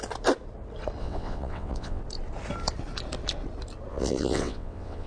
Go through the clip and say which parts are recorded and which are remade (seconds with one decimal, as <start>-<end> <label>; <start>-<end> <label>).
0.0-1.0 recorded; 1.0-2.0 remade; 2.0-3.9 recorded; 3.9-5.1 remade